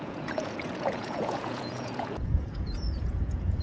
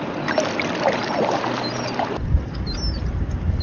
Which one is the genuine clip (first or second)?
second